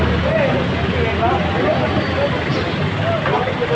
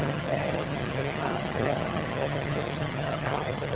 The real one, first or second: first